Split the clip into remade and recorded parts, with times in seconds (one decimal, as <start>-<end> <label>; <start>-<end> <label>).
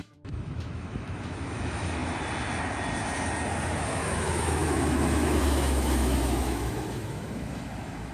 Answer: 0.0-2.0 remade; 2.0-3.8 recorded; 3.8-8.1 remade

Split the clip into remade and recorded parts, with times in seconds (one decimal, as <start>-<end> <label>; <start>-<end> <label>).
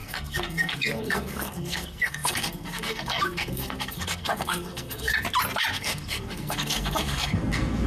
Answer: 0.0-5.1 remade; 5.1-5.7 recorded; 5.7-7.9 remade